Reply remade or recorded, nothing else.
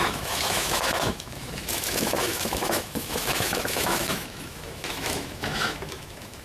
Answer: remade